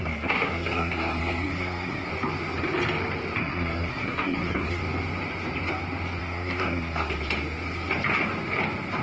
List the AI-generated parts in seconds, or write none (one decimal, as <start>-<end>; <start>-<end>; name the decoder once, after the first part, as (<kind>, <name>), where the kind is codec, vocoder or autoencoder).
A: 0.0-2.1 (codec, SNAC); 3.4-4.8; 6.2-7.1